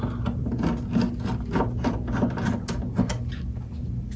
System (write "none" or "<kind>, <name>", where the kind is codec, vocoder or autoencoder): none